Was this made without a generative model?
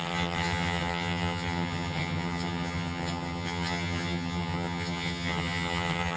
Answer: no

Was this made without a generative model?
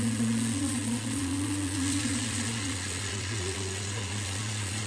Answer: no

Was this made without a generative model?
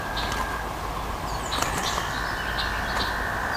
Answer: yes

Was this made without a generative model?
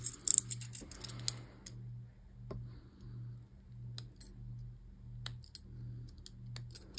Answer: yes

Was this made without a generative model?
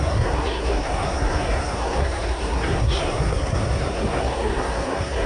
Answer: no